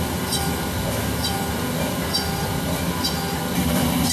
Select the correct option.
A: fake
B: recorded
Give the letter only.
B